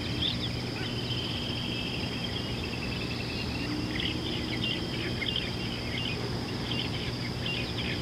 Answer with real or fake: real